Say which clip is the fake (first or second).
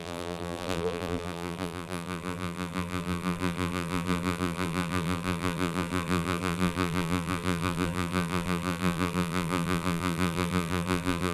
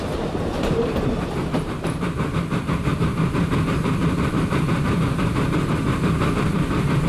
first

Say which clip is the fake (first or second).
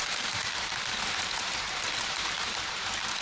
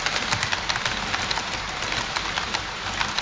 first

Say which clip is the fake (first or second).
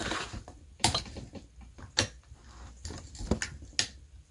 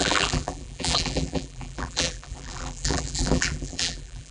second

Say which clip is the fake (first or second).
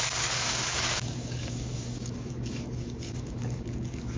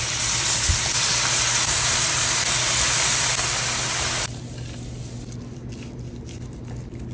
first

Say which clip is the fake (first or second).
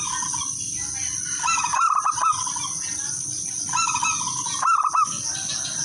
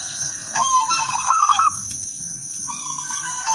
second